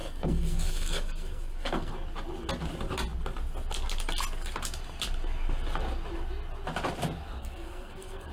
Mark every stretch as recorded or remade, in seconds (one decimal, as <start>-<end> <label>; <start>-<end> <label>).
0.0-1.9 remade; 1.9-7.4 recorded; 7.4-8.3 remade